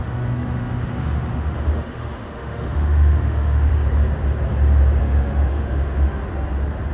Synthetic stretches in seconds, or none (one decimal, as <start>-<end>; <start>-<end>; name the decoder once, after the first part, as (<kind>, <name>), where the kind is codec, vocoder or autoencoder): 0.0-3.7 (autoencoder, DAC-VAE); 5.0-6.2